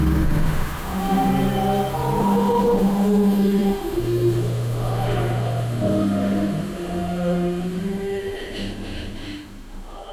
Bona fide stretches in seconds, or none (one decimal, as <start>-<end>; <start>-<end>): 1.3-2.2